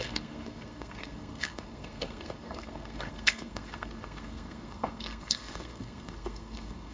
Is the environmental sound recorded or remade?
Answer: remade